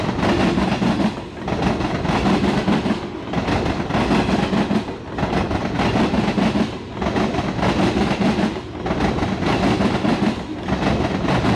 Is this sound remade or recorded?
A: recorded